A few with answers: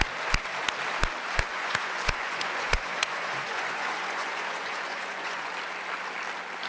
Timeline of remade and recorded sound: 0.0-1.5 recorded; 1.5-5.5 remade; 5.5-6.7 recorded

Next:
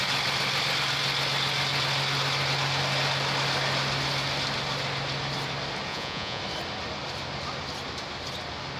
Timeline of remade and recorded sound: 0.0-5.9 recorded; 5.9-6.4 remade; 6.4-8.8 recorded

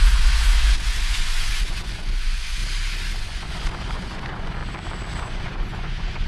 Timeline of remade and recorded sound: 0.0-2.6 remade; 2.6-3.2 recorded; 3.2-4.6 remade; 4.6-5.2 recorded; 5.2-6.3 remade

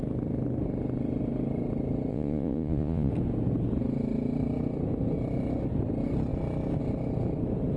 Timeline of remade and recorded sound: 0.0-2.1 recorded; 2.1-3.1 remade; 3.1-7.8 recorded

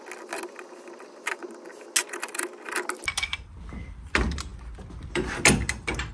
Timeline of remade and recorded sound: 0.0-6.1 recorded

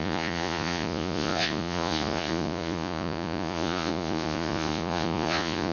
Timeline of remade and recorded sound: 0.0-5.7 remade

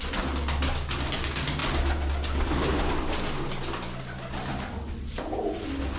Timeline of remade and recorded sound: 0.0-6.0 recorded